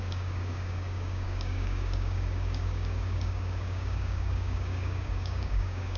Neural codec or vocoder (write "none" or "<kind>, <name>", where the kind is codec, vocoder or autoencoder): codec, DAC